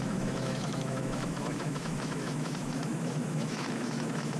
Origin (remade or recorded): remade